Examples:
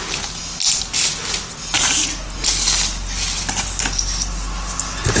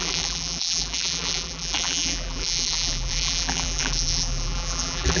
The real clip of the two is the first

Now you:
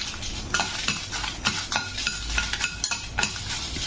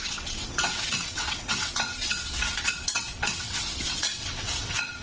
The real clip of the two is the first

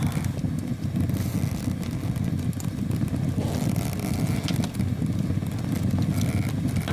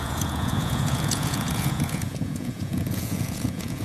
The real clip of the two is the first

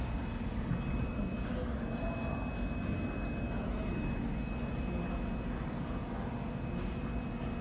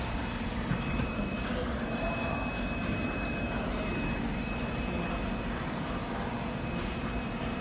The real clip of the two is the first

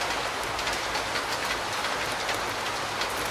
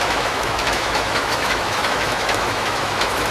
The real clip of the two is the first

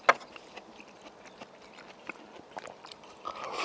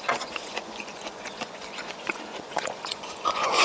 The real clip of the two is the first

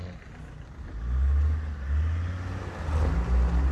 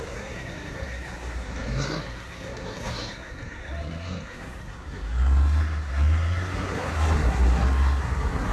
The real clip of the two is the first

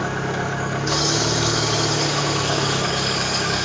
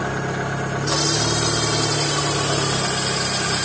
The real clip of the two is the second